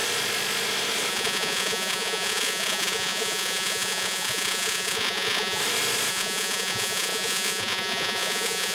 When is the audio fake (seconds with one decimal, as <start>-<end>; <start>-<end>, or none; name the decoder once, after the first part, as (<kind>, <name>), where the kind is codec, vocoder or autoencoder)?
1.1-5.6 (vocoder, Vocos); 6.1-8.7

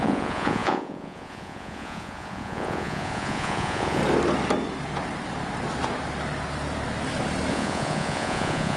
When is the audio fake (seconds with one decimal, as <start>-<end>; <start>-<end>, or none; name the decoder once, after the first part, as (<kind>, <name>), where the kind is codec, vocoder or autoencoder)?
0.0-4.0 (vocoder, Vocos); 7.5-8.8

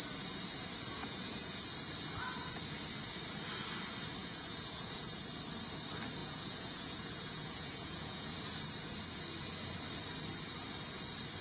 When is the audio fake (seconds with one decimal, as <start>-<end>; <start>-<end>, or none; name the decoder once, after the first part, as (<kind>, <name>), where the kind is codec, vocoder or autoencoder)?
1.0-1.6 (vocoder, Vocos); 4.2-5.2; 6.2-8.4

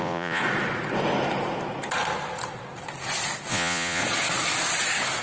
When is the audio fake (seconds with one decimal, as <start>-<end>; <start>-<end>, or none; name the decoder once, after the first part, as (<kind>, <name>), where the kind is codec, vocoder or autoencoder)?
0.0-0.4 (vocoder, Vocos); 3.5-4.0

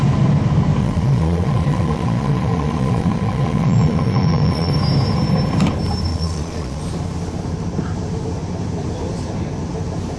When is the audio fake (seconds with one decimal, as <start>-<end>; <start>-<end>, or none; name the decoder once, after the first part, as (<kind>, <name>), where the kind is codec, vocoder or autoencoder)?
0.8-4.7 (vocoder, Vocos); 6.1-6.8